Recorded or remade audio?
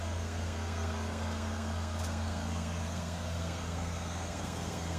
remade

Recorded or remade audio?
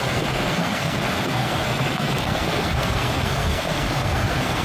remade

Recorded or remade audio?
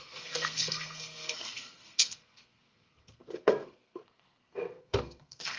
remade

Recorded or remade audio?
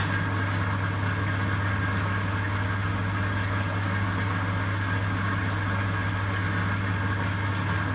recorded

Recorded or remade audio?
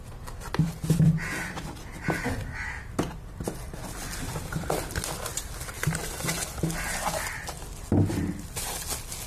recorded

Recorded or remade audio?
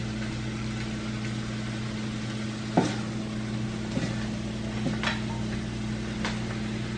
recorded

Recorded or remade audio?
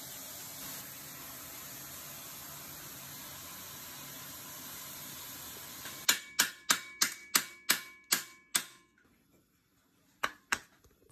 recorded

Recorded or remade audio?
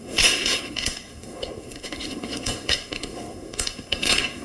remade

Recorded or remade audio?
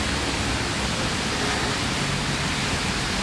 recorded